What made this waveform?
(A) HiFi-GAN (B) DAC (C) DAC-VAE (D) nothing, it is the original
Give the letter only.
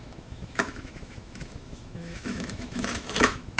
C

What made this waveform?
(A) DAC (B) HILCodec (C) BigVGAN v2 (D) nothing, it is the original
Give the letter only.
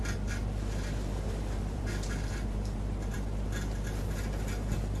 C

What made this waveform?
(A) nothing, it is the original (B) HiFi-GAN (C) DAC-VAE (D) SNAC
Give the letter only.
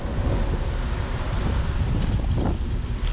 A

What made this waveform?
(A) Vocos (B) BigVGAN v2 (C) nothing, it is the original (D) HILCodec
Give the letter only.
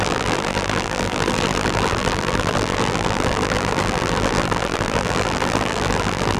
B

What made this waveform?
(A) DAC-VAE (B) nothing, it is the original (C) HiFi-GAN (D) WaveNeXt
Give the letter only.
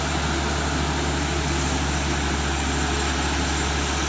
B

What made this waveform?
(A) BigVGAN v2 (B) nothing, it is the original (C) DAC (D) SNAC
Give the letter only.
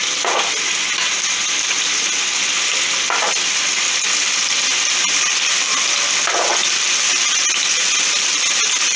B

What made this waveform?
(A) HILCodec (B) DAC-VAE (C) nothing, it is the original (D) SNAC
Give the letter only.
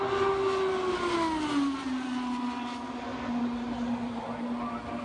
C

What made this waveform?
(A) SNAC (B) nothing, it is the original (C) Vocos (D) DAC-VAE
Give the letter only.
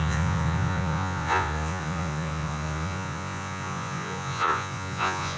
C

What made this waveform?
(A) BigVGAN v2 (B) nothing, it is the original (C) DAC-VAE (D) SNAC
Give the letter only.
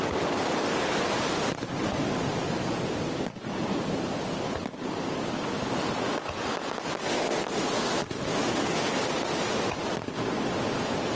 B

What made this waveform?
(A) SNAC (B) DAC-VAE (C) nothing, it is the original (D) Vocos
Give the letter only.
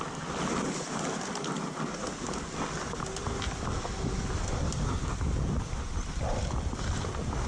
C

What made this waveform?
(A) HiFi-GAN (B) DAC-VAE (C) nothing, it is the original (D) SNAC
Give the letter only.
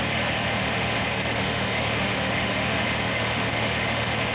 B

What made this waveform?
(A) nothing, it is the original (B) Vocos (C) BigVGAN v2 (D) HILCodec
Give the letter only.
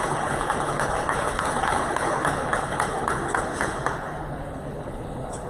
D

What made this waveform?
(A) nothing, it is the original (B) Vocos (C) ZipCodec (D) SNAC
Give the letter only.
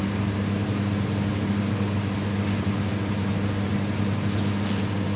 A